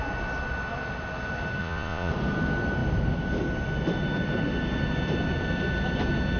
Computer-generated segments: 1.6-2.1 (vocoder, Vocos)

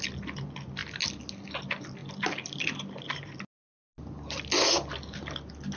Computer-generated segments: none

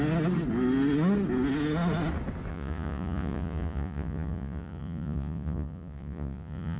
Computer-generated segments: 2.5-6.8 (vocoder, Vocos)

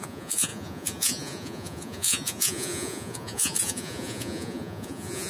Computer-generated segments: 0.0-5.3 (vocoder, Vocos)

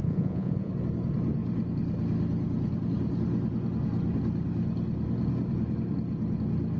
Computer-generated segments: 0.0-0.7 (vocoder, Vocos)

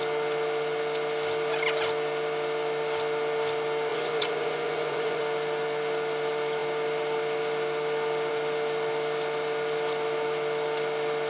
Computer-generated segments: 3.9-5.2 (vocoder, Vocos)

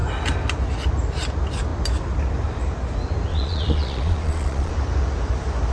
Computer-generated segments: 3.3-4.7 (vocoder, Vocos)